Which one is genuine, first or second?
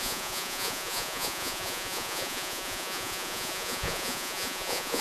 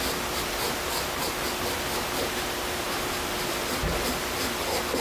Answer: second